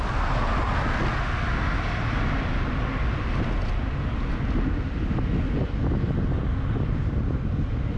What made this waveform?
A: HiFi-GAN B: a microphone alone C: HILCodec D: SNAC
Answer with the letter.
B